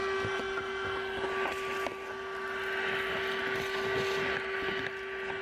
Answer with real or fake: real